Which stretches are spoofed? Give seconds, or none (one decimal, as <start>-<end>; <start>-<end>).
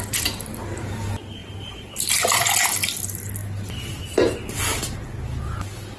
none